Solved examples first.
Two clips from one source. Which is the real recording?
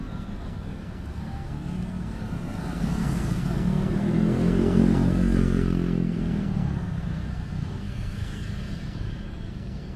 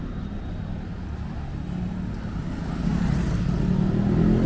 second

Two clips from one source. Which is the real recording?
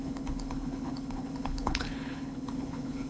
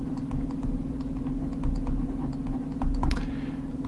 second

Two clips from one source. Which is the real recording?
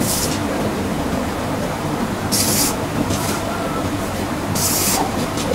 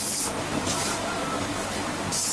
second